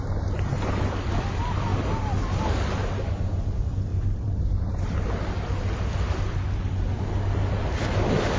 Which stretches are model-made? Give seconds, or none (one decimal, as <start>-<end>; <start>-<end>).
3.9-4.6